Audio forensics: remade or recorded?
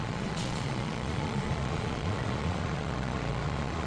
remade